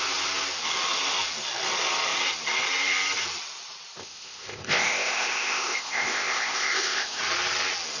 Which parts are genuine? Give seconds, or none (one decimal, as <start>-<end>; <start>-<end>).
0.0-4.0; 7.2-8.0